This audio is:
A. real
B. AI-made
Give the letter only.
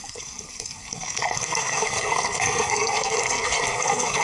B